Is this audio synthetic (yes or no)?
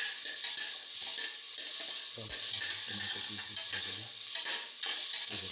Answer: no